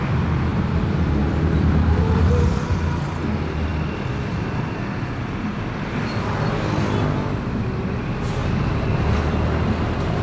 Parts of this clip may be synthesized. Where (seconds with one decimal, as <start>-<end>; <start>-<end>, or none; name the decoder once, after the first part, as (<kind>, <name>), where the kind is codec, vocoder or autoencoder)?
0.5-2.3 (vocoder, BigVGAN v2)